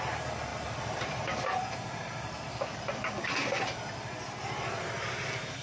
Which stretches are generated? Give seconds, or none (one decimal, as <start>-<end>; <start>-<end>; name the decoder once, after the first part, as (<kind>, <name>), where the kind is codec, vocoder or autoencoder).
0.5-3.9 (vocoder, BigVGAN v2)

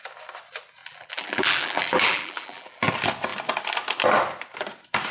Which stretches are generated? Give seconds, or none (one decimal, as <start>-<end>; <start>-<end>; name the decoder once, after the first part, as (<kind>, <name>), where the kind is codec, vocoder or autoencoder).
0.8-2.9 (vocoder, BigVGAN v2)

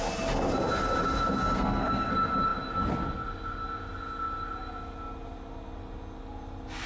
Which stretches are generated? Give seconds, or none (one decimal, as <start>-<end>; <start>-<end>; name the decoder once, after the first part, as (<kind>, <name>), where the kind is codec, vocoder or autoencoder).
1.4-2.1 (codec, SNAC)

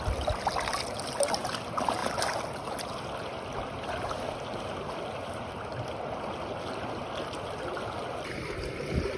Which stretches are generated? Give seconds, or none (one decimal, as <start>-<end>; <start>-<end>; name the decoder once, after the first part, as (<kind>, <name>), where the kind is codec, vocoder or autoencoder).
none

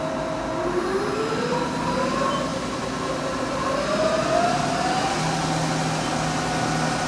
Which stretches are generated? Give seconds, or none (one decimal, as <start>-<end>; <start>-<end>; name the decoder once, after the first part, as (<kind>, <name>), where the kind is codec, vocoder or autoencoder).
none

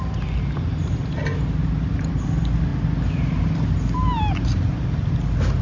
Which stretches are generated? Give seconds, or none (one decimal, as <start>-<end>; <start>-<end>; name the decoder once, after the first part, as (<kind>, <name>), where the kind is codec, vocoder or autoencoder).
none